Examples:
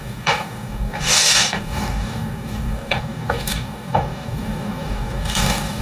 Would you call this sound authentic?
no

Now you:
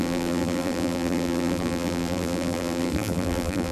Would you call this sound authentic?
no